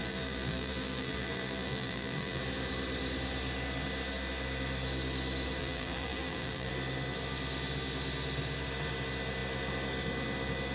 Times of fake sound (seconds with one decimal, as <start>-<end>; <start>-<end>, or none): 0.0-2.4; 5.6-6.7